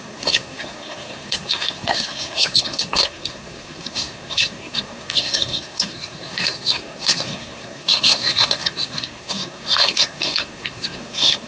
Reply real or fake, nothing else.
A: fake